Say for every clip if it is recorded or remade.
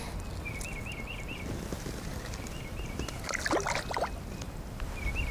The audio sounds recorded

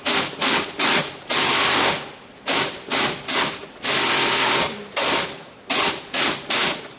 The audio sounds recorded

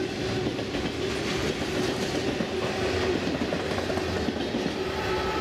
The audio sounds recorded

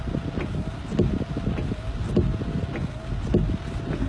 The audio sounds recorded